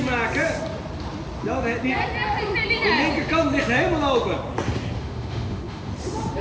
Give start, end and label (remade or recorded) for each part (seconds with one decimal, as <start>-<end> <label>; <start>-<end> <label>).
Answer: 0.0-5.0 recorded; 5.0-5.9 remade; 5.9-6.4 recorded